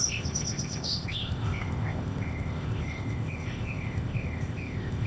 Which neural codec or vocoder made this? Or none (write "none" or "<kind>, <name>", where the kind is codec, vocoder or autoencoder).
codec, ZipCodec